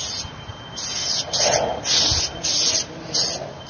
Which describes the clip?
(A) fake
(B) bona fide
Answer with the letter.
B